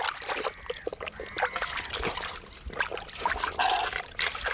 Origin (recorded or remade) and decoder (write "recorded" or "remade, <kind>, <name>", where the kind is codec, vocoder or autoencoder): recorded